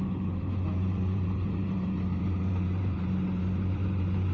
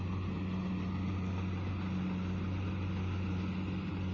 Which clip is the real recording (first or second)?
second